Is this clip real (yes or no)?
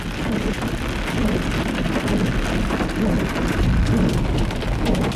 yes